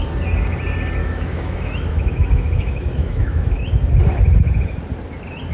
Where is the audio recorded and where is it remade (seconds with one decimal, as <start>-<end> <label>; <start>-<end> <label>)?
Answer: 0.0-1.0 recorded; 1.0-3.9 remade; 3.9-5.5 recorded